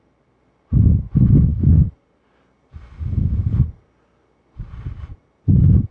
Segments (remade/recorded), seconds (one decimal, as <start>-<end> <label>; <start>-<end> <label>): 0.0-5.1 recorded; 5.1-5.9 remade